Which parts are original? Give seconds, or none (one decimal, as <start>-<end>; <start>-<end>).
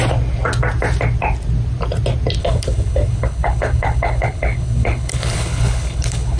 0.0-2.4